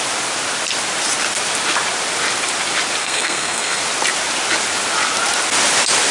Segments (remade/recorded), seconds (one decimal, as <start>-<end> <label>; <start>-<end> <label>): 0.0-3.0 recorded; 3.0-3.8 remade; 3.8-6.1 recorded